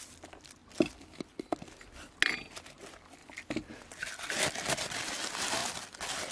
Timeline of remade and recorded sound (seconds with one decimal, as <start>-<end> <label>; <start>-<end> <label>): 0.0-6.3 recorded